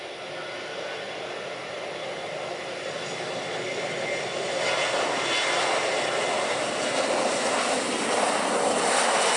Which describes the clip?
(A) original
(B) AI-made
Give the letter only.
A